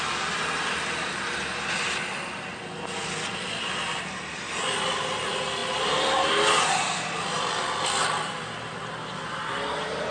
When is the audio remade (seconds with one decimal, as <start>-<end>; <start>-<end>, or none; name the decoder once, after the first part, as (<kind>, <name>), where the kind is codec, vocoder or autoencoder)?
none